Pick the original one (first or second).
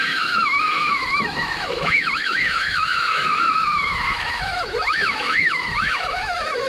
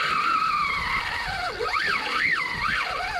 second